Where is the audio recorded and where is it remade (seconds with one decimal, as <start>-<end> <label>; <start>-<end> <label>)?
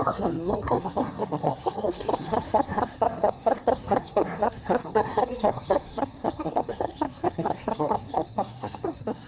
0.0-9.3 remade